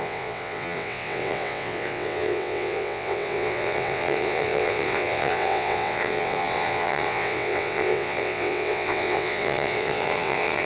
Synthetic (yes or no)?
yes